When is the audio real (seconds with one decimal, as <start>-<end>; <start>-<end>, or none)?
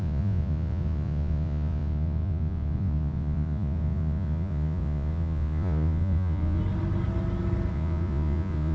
6.6-7.7